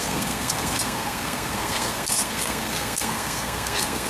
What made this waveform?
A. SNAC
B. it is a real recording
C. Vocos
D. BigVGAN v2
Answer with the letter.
A